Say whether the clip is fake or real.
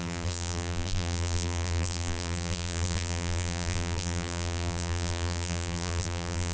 fake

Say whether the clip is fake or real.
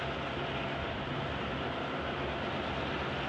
real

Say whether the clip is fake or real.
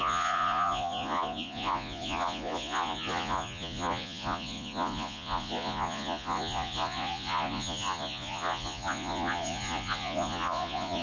fake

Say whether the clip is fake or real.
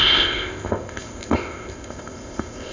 fake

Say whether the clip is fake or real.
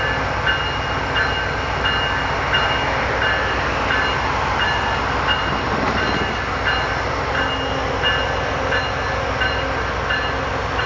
real